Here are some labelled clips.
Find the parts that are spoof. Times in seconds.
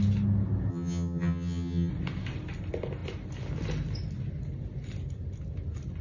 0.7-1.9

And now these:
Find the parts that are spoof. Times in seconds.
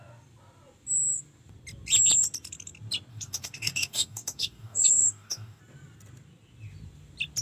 3.1-5.6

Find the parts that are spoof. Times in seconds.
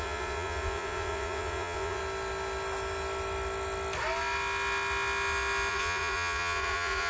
0.0-2.0; 5.7-7.1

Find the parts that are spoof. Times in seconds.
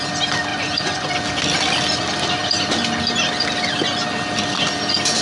0.5-1.1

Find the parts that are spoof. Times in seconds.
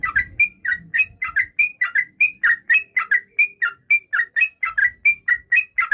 none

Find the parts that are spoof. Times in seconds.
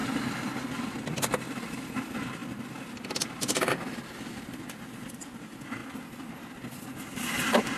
none